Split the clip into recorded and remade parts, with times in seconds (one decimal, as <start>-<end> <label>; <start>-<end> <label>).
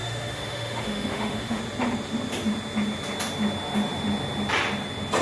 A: 0.0-1.6 remade; 1.6-5.2 recorded